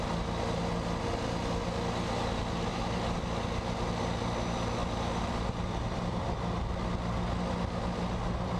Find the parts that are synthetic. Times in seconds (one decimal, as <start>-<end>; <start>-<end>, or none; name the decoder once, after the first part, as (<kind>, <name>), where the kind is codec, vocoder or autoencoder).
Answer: 2.7-3.2 (vocoder, BigVGAN v2); 4.8-6.7